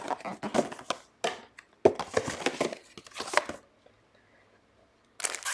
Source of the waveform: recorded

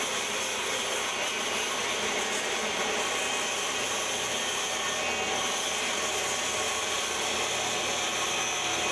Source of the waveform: recorded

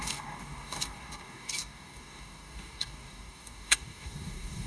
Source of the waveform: remade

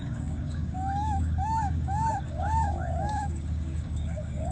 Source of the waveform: remade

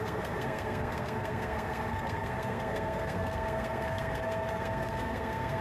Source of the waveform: remade